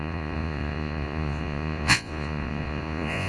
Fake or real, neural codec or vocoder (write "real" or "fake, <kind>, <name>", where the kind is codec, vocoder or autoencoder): fake, vocoder, Vocos